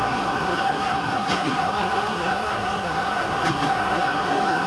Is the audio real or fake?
fake